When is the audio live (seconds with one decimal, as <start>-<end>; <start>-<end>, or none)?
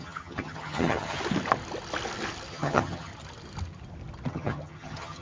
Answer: 1.2-2.5; 3.1-4.3